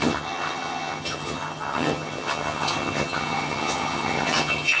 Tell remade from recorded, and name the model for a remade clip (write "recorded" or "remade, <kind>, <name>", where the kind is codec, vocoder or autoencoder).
remade, vocoder, HiFi-GAN